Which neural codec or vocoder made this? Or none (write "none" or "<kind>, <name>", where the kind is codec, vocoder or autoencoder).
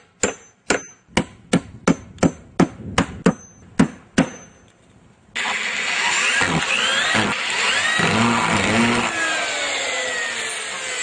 none